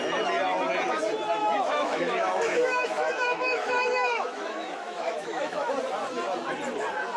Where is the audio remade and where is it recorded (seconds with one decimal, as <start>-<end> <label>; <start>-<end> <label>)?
0.0-1.4 recorded; 1.4-5.7 remade; 5.7-7.2 recorded